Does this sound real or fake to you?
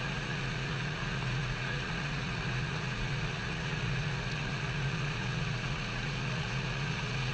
fake